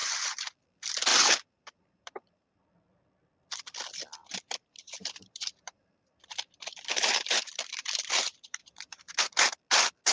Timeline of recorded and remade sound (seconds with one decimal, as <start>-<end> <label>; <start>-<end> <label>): 0.0-0.5 remade; 0.5-1.1 recorded; 1.1-2.6 remade; 2.6-4.2 recorded; 4.2-9.2 remade; 9.2-10.1 recorded